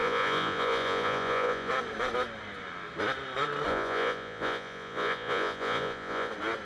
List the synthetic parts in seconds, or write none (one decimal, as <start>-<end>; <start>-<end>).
0.0-1.7; 3.7-6.3